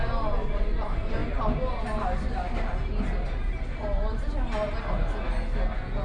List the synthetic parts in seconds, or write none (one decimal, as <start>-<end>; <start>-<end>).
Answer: none